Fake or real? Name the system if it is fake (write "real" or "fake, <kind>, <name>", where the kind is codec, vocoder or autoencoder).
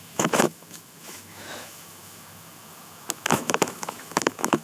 fake, autoencoder, DAC-VAE